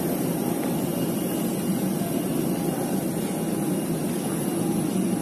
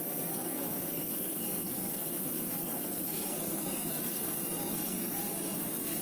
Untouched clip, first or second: first